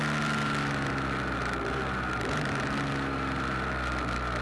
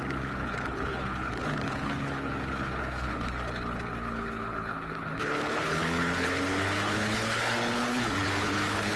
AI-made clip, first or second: second